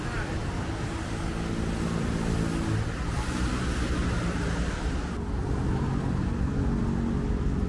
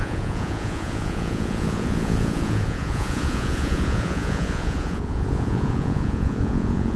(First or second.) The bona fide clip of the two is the first